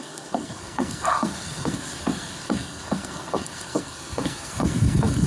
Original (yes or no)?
no